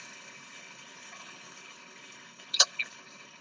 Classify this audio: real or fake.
fake